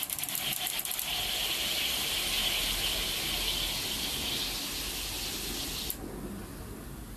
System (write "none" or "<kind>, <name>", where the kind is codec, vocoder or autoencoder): none